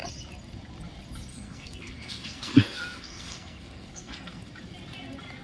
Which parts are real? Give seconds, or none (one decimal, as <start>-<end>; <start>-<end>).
0.0-1.3; 4.5-5.4